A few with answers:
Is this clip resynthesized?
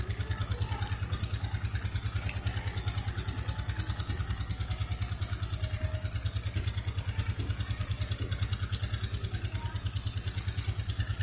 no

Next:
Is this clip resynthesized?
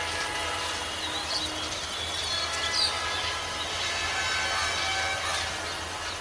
no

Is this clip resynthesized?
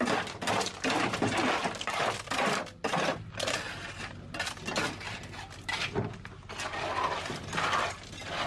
no